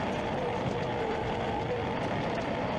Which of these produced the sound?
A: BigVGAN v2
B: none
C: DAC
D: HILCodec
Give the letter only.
B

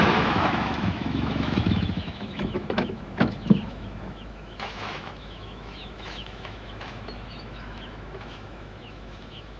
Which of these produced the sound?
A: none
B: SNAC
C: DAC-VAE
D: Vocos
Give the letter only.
C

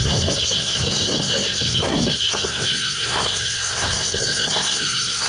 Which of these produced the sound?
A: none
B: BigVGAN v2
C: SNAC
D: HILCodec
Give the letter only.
C